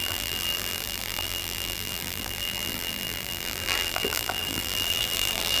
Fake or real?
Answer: fake